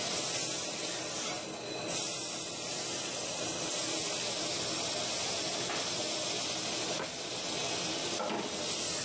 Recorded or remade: recorded